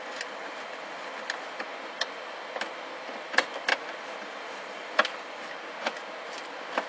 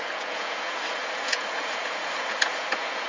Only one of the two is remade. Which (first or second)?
second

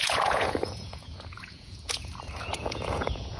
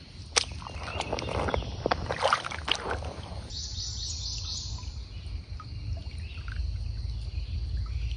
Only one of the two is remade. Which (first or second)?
first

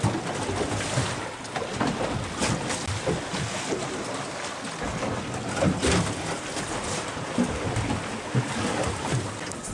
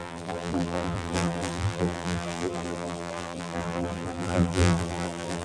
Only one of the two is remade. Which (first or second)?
second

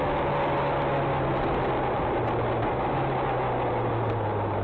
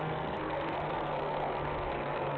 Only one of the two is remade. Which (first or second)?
second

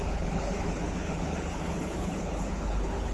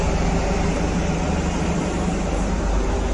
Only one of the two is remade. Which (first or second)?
first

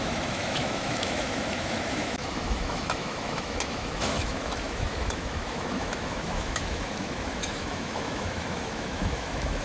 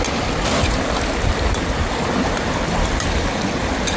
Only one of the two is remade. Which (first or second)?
first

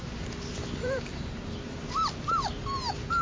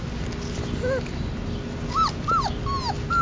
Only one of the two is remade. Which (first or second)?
first